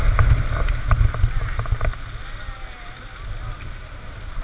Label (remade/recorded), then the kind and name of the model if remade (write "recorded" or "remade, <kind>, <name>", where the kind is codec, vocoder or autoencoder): recorded